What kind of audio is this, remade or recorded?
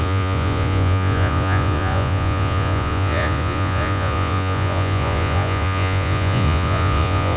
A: remade